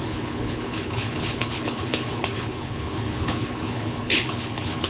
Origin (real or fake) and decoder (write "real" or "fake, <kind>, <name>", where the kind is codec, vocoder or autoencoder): fake, codec, HILCodec